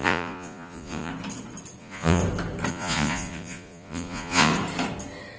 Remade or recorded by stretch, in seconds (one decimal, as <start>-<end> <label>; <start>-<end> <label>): 0.0-1.1 remade; 1.1-1.8 recorded; 1.8-2.2 remade; 2.2-2.7 recorded; 2.7-4.5 remade; 4.5-5.4 recorded